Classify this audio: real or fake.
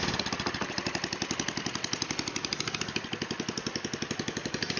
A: real